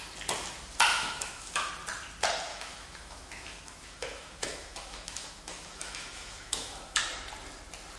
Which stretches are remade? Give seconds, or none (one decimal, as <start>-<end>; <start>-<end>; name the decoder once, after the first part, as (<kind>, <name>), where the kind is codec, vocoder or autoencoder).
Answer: 0.9-1.7 (autoencoder, DAC-VAE); 2.5-7.0